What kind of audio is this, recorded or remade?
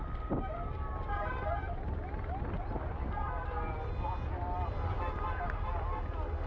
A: recorded